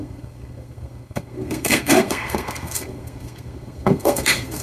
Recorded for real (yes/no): no